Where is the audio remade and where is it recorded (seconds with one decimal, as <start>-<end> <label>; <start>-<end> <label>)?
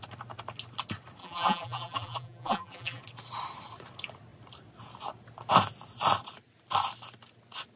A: 0.0-1.2 recorded; 1.2-3.0 remade; 3.0-7.8 recorded